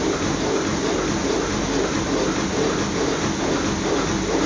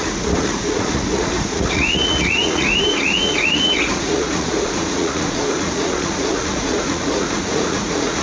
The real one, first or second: first